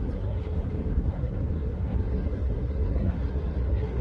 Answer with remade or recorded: remade